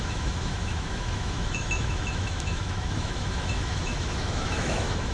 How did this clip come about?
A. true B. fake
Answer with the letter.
B